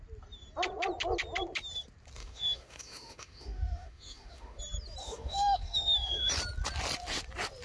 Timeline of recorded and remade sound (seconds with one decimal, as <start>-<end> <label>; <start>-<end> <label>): 0.0-2.2 recorded; 2.2-4.6 remade; 4.6-5.0 recorded; 5.0-6.3 remade; 6.3-7.6 recorded